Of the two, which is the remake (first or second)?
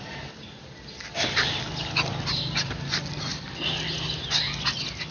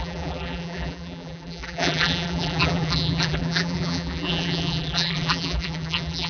second